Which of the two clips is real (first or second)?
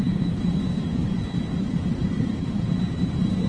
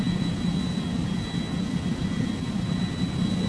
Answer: second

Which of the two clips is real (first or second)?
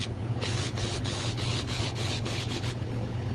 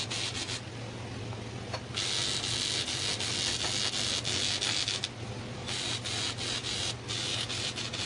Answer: second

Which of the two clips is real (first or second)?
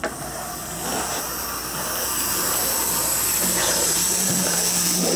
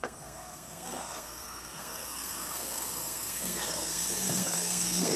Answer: first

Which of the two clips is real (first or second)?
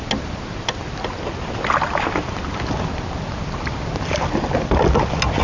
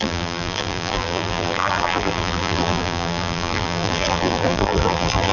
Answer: first